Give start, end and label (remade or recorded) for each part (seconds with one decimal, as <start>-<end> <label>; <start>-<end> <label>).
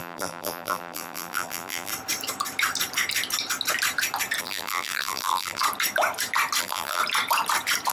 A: 0.0-1.9 remade; 1.9-4.4 recorded; 4.4-5.6 remade; 5.6-6.6 recorded; 6.6-7.0 remade; 7.0-7.9 recorded